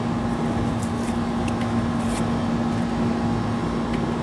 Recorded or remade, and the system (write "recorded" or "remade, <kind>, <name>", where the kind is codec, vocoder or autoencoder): recorded